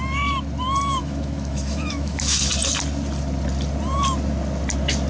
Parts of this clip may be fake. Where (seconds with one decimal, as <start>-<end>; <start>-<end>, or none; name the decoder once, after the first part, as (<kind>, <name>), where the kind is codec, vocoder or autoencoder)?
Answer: 1.0-2.5 (autoencoder, DAC-VAE)